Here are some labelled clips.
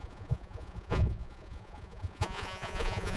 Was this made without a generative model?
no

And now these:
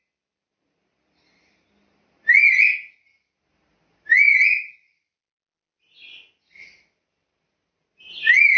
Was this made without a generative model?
yes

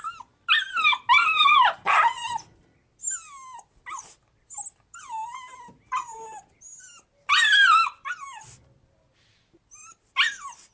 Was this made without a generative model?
yes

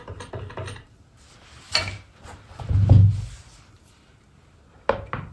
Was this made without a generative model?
yes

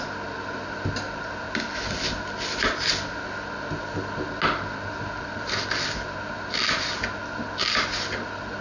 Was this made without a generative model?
yes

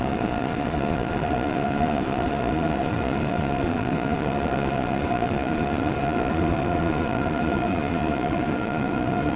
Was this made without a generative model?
no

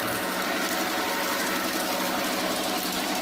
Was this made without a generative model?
yes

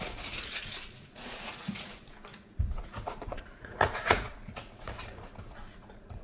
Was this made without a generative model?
no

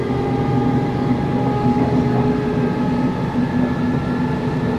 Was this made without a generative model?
yes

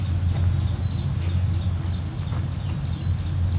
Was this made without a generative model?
yes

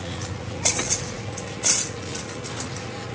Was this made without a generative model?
no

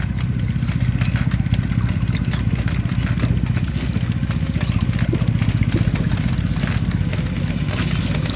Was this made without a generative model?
yes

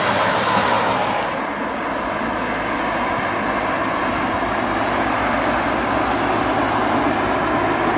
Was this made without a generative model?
yes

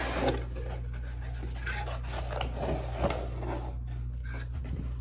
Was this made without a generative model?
yes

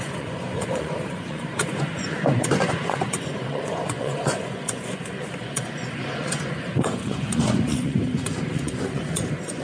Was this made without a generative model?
no